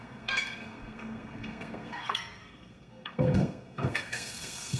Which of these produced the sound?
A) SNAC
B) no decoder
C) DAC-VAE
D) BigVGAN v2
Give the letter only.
A